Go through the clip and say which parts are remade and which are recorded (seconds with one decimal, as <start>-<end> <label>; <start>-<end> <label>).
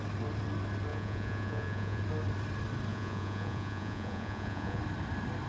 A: 0.0-0.9 recorded; 0.9-2.0 remade; 2.0-2.9 recorded; 2.9-4.8 remade; 4.8-5.5 recorded